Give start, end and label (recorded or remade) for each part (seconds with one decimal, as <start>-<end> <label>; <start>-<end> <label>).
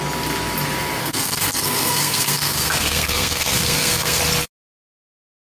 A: 0.0-1.0 recorded; 1.0-4.2 remade; 4.2-5.4 recorded